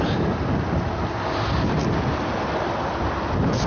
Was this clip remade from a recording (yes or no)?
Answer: no